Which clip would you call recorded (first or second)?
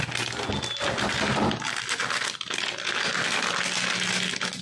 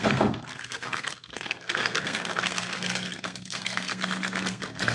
first